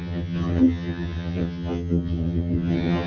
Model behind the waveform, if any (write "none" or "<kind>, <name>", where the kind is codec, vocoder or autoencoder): vocoder, HiFi-GAN